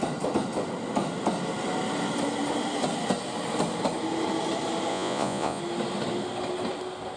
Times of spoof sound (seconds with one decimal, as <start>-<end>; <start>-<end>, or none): 4.9-5.6